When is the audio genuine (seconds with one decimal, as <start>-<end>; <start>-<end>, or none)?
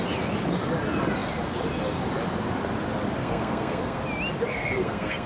0.0-3.2; 4.0-4.5